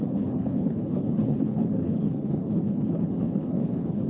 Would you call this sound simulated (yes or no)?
yes